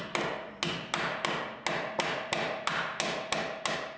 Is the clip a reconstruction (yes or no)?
no